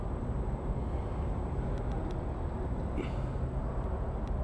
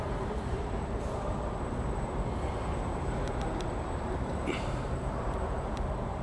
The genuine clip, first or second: first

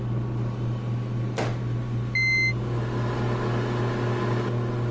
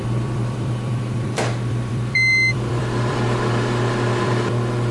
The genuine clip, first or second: first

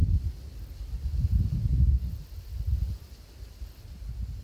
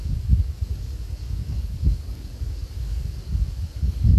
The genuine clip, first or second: first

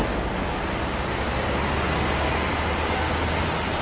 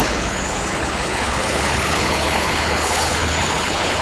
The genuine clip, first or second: first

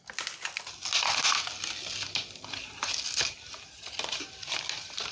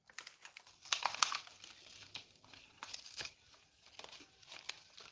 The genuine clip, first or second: first